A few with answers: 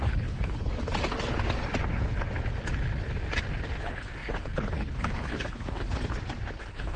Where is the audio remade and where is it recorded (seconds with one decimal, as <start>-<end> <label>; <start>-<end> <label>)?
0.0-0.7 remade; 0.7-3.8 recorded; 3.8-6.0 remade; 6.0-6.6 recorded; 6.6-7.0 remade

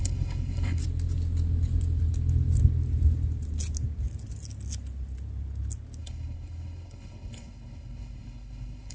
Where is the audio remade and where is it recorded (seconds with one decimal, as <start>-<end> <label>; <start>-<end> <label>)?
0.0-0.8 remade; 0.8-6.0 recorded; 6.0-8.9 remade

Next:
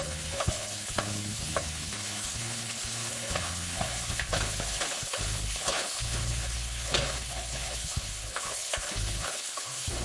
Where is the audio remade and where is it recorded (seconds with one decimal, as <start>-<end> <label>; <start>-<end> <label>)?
0.0-10.0 remade